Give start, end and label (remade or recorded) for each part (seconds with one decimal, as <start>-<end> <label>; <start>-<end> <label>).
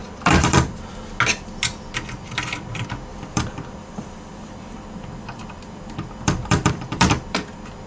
0.0-0.9 remade; 0.9-3.1 recorded; 3.1-7.9 remade